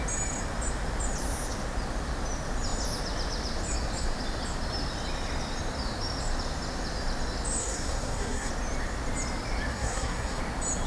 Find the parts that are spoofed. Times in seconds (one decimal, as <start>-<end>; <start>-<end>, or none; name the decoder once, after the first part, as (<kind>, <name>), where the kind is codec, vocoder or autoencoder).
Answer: 7.6-8.5 (codec, SNAC); 9.7-10.4